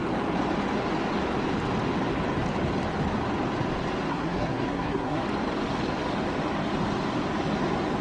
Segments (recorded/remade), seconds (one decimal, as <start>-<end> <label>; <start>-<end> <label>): 0.0-4.1 recorded; 4.1-5.2 remade; 5.2-8.0 recorded